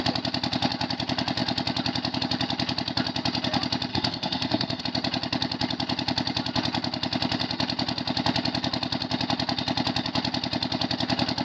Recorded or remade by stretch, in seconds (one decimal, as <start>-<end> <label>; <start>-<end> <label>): 0.0-3.9 recorded; 3.9-4.8 remade; 4.8-11.4 recorded